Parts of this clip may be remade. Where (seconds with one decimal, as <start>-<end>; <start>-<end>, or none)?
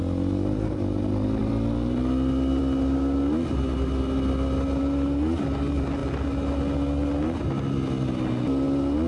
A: none